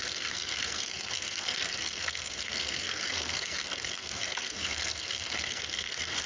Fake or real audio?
fake